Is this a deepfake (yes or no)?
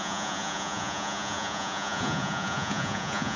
yes